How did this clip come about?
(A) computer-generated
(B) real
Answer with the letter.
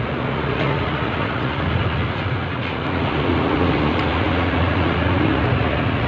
A